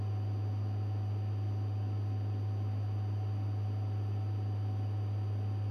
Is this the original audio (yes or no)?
yes